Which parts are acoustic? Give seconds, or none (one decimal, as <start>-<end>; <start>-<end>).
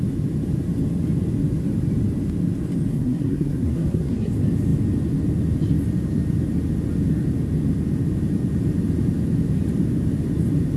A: 0.0-2.9; 4.3-10.8